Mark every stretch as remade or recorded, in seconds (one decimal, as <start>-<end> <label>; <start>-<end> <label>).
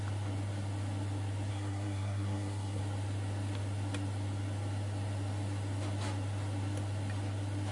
0.0-1.5 recorded; 1.5-2.8 remade; 2.8-7.7 recorded